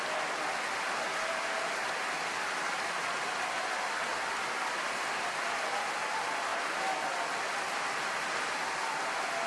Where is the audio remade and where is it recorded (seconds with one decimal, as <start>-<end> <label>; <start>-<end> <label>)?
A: 0.0-6.5 recorded; 6.5-7.1 remade; 7.1-9.5 recorded